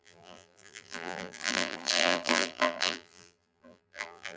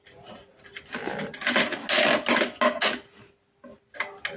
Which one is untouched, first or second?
second